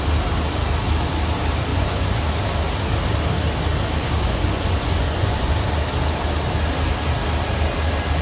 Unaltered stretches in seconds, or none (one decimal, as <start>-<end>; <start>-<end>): 0.0-1.7; 2.2-4.0; 5.5-8.2